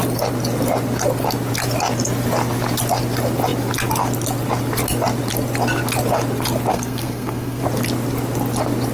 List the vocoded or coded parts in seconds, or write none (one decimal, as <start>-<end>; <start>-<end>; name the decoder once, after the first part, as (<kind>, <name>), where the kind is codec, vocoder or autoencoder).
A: 6.7-7.6 (codec, SNAC)